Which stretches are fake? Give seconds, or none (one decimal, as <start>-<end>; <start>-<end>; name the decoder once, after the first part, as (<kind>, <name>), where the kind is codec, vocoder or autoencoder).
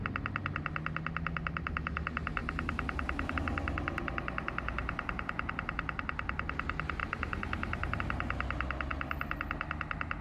2.4-3.3 (vocoder, BigVGAN v2); 4.8-5.5; 7.0-8.0; 8.9-9.4